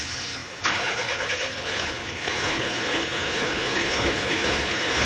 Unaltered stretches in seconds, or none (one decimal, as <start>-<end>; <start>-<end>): none